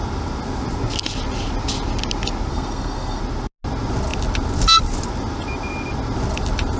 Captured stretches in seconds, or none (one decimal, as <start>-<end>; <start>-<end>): 0.0-2.5; 3.2-6.8